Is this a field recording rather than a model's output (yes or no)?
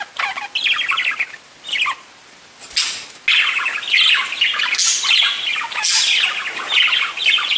yes